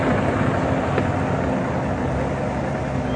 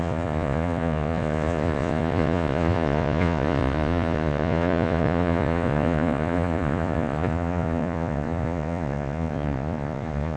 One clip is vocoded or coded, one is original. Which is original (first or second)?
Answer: first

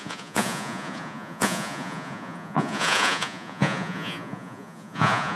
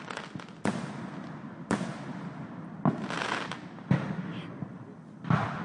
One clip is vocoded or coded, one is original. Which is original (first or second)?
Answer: second